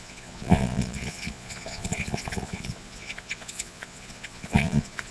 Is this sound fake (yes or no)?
yes